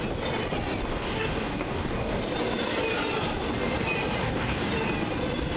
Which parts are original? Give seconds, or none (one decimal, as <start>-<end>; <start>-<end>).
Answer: 0.0-0.9; 2.2-4.2; 4.7-5.6